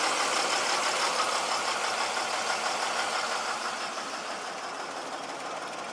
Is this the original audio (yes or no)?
yes